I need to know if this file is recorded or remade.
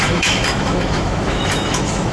remade